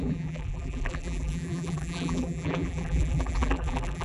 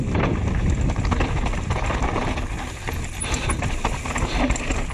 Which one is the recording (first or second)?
second